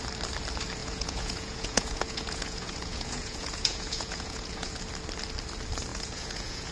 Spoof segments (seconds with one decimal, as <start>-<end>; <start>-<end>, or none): 0.8-4.8; 5.9-6.7